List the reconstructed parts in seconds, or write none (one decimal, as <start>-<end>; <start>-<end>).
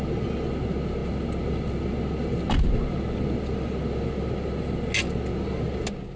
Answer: none